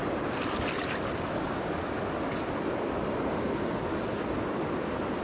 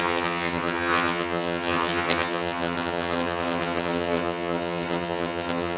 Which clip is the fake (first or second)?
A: second